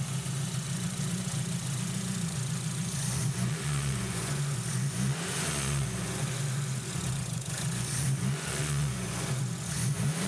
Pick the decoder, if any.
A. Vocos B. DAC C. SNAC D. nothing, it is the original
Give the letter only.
A